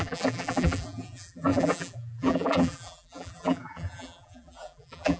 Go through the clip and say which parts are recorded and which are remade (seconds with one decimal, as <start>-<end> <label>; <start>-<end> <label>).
0.0-5.2 remade